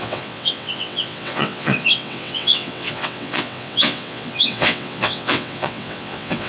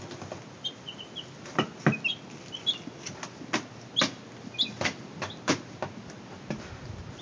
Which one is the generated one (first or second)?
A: first